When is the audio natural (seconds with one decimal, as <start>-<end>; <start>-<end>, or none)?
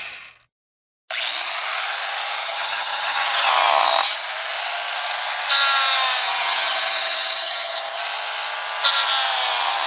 0.0-2.4; 3.5-6.2; 8.0-9.9